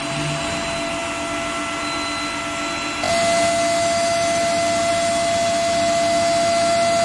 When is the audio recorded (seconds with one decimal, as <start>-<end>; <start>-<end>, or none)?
0.0-7.0